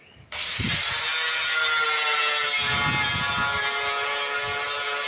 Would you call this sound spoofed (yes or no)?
no